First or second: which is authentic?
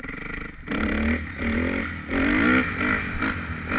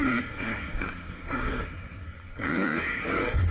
first